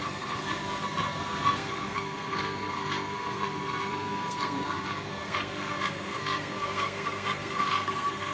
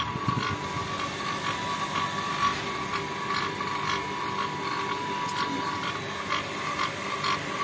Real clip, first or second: second